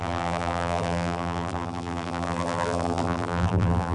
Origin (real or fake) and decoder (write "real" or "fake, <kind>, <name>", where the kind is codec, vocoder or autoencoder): fake, vocoder, BigVGAN v2